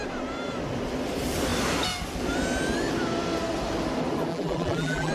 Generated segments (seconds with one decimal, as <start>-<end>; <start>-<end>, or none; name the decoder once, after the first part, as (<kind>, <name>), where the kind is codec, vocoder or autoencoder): 4.3-5.1 (vocoder, BigVGAN v2)